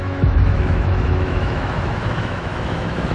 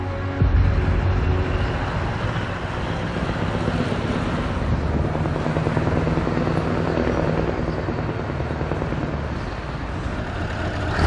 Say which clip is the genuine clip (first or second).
second